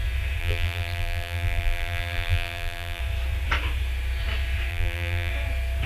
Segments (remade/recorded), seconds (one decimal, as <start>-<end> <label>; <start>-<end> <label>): 0.0-0.4 recorded; 0.4-3.0 remade; 3.0-4.7 recorded; 4.7-5.3 remade; 5.3-5.9 recorded